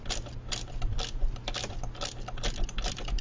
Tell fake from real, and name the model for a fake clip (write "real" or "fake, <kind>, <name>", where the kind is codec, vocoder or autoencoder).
real